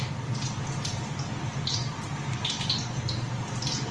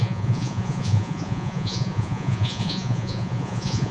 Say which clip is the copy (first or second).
second